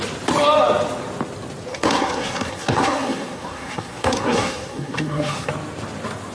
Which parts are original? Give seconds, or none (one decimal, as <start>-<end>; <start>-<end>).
0.0-1.7; 5.5-6.3